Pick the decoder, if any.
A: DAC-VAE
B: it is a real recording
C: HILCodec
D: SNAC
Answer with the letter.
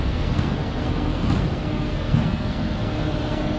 D